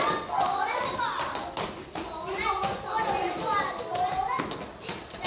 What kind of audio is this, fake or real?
real